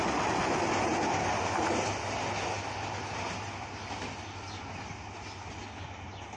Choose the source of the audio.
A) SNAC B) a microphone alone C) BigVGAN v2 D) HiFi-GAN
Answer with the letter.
B